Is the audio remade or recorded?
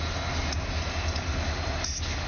recorded